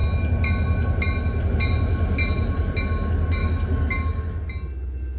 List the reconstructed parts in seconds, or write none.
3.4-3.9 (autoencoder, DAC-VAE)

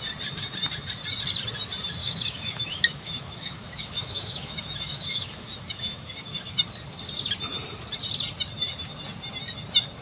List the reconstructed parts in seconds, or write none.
2.0-6.5 (autoencoder, DAC-VAE)

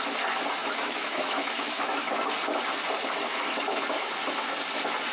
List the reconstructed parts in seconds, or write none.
0.6-2.3 (autoencoder, DAC-VAE); 3.3-4.1